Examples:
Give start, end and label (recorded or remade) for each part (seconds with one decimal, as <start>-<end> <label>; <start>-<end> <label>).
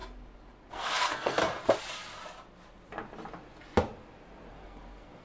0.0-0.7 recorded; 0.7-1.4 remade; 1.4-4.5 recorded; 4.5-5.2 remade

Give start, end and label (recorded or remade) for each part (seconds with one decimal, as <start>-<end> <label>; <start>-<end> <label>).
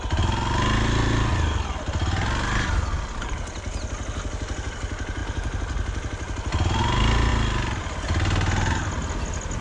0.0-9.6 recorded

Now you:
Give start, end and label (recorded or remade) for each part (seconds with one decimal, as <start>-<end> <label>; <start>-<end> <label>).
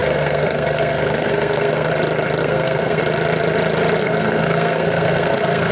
0.0-1.9 remade; 1.9-2.4 recorded; 2.4-3.0 remade; 3.0-4.0 recorded; 4.0-5.7 remade